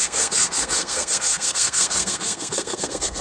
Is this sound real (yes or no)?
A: no